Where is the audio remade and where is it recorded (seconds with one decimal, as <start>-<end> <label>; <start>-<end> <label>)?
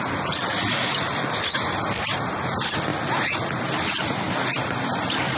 0.0-5.4 recorded